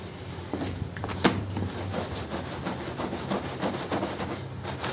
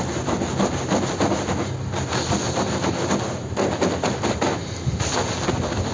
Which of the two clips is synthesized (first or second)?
first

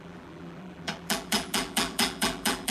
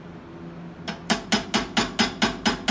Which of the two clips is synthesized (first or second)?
first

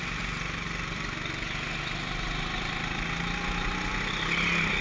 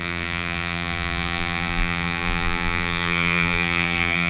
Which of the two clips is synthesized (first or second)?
second